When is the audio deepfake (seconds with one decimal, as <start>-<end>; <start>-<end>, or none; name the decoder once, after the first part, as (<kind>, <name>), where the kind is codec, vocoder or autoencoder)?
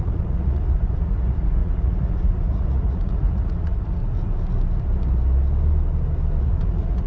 0.0-4.0 (vocoder, Vocos); 6.4-7.1